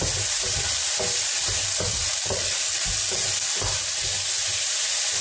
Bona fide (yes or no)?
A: yes